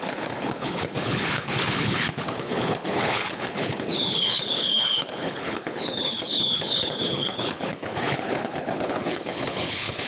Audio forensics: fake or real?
fake